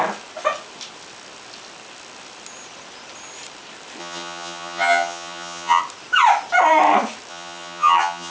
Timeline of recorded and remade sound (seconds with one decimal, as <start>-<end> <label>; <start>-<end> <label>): 0.0-4.0 recorded; 4.0-5.8 remade; 5.8-7.3 recorded; 7.3-8.3 remade

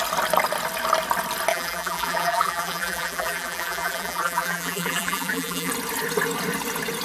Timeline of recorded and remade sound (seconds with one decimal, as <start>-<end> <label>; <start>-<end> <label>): 0.0-1.5 recorded; 1.5-5.7 remade; 5.7-7.0 recorded

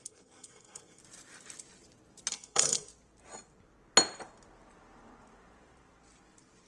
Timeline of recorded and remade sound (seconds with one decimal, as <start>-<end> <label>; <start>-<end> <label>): 0.0-1.0 remade; 1.0-2.3 recorded; 2.3-2.9 remade; 2.9-6.7 recorded

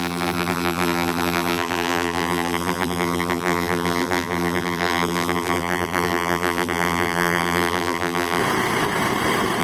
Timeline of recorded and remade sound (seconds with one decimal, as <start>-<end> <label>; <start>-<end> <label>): 0.0-8.4 remade; 8.4-9.6 recorded

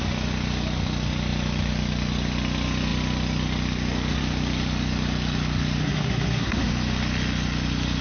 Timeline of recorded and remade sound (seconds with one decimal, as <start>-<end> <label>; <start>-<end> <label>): 0.0-5.8 recorded; 5.8-6.7 remade; 6.7-8.0 recorded